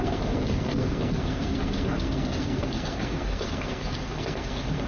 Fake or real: fake